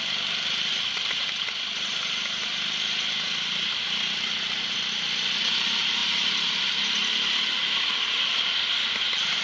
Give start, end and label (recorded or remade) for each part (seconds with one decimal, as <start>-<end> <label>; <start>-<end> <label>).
0.0-9.4 recorded